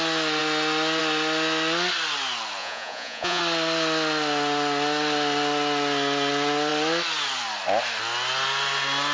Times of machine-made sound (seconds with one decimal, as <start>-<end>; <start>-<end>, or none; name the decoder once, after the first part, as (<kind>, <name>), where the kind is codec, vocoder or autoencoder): 2.6-3.4 (vocoder, Vocos)